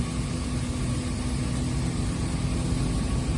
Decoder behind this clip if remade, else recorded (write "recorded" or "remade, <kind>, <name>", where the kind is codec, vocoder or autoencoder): recorded